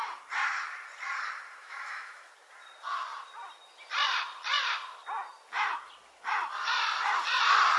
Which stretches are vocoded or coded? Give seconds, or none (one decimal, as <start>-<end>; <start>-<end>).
1.6-2.3